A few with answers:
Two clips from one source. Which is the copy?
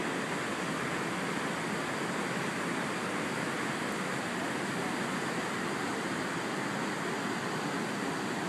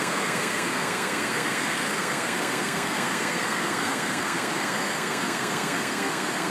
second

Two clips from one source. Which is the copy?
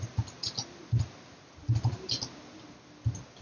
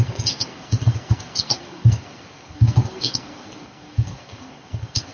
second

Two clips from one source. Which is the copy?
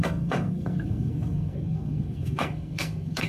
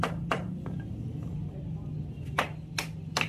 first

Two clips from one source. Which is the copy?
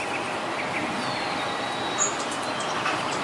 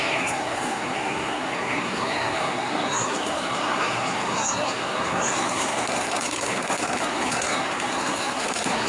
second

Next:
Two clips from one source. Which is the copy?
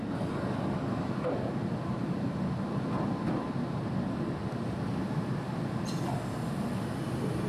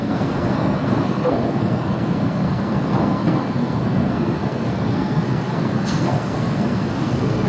second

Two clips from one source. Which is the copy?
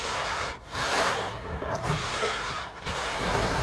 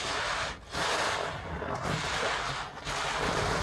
first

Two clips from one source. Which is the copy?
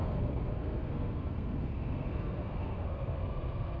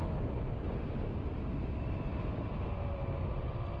first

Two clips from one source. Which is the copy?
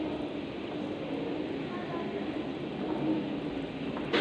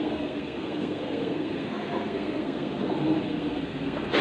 second